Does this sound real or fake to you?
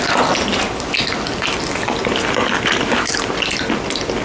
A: real